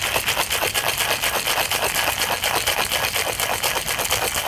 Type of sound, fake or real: real